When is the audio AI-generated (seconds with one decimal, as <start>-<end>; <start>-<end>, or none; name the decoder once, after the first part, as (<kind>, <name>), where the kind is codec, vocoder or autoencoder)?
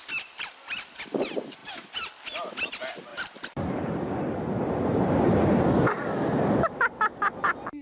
1.6-2.1 (vocoder, BigVGAN v2); 3.1-5.6